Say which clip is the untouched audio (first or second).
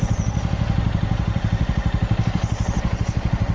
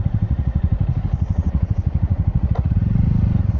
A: first